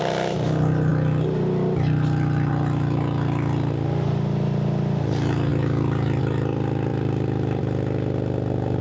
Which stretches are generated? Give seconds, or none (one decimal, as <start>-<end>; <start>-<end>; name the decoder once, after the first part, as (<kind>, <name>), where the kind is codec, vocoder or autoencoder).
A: none

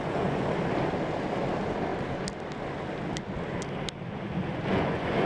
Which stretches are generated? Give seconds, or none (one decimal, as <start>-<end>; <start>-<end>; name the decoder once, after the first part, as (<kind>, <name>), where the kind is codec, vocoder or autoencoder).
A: 0.0-0.5 (vocoder, Vocos); 4.5-5.3

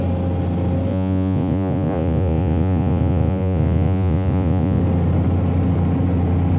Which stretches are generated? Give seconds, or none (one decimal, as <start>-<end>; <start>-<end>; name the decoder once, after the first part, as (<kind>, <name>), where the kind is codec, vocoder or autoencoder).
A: 0.9-4.8 (vocoder, Vocos)